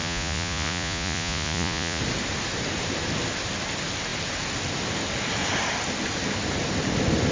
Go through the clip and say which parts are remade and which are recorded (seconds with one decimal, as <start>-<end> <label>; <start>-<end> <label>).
0.0-2.0 remade; 2.0-7.3 recorded